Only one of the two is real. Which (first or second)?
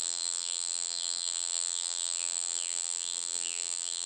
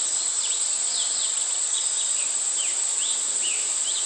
second